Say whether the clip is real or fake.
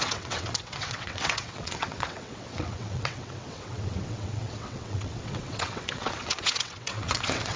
fake